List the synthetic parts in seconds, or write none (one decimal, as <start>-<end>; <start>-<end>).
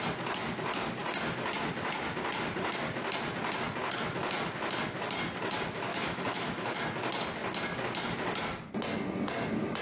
5.9-6.8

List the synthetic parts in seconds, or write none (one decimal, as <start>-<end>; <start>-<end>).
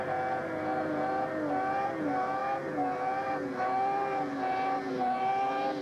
none